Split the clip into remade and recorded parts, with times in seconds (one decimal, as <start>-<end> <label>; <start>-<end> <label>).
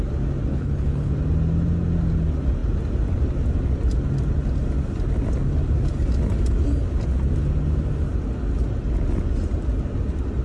0.0-0.5 recorded; 0.5-1.1 remade; 1.1-10.4 recorded